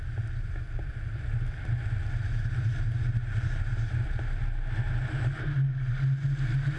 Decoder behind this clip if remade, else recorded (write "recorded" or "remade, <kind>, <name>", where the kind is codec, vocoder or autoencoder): recorded